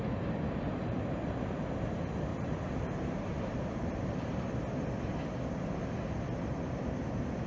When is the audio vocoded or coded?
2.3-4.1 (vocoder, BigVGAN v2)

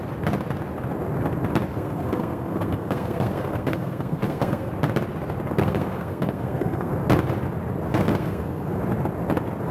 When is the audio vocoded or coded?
1.7-4.7 (codec, SNAC); 5.6-6.9; 7.9-8.8

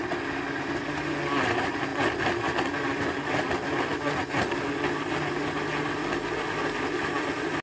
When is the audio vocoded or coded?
none